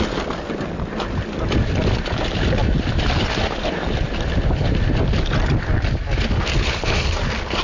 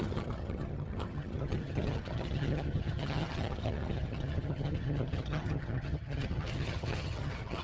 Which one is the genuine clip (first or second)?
first